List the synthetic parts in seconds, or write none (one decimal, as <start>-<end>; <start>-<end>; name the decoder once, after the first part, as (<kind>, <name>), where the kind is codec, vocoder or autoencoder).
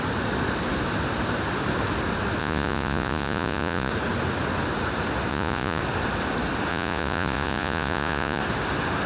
2.4-3.9 (vocoder, Vocos); 5.3-5.8; 6.7-8.4